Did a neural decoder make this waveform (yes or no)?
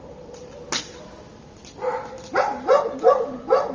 no